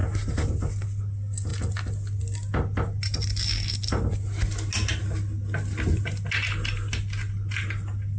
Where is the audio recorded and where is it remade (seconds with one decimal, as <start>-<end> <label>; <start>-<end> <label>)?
0.0-8.2 recorded